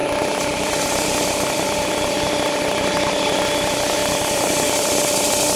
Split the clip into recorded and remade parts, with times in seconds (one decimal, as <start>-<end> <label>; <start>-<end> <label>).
0.0-3.4 remade; 3.4-4.0 recorded; 4.0-5.6 remade